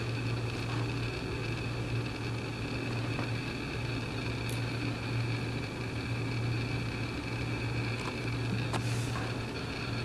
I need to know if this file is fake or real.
real